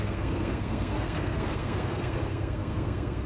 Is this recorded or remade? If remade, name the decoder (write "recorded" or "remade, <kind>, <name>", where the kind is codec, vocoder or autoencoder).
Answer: remade, codec, SNAC